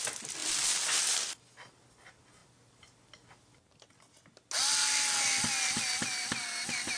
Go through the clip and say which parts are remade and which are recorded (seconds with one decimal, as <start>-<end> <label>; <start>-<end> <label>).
0.0-7.0 recorded